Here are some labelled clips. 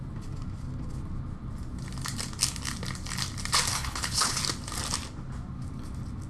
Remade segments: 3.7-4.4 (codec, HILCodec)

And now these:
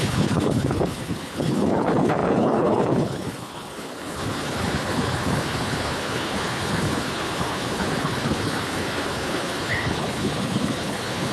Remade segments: 0.0-11.3 (codec, HILCodec)

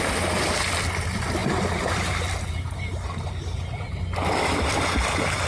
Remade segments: none